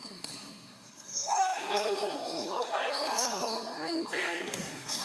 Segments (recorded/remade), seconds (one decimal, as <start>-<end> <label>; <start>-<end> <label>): 0.0-5.0 remade